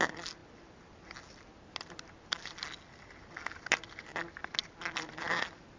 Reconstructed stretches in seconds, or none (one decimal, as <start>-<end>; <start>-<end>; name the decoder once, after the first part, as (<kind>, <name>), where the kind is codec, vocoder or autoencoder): none

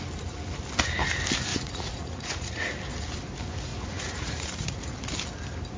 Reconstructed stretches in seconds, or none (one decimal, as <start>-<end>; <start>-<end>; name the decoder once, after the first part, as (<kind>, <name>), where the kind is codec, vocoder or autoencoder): 1.5-2.7 (vocoder, Vocos); 3.7-4.9